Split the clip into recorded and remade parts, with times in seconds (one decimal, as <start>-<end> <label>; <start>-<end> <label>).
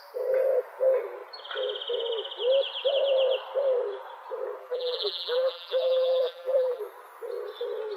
0.0-4.6 recorded; 4.6-6.8 remade; 6.8-8.0 recorded